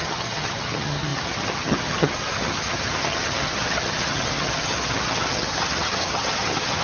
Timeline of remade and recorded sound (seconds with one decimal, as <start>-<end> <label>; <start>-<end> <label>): 0.0-6.8 remade